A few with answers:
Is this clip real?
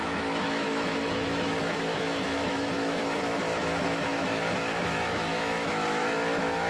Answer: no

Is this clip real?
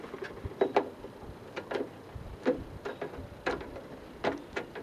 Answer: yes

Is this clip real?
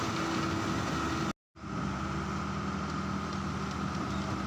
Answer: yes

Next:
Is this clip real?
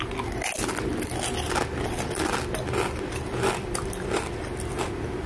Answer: yes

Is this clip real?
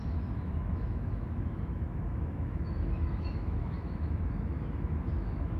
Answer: no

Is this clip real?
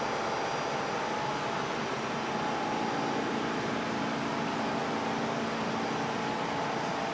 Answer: yes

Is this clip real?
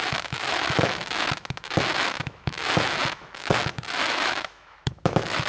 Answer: no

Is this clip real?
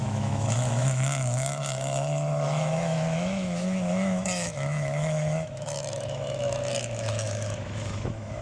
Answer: no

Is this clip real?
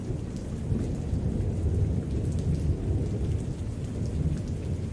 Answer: yes